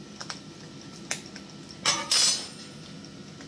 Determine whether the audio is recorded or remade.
recorded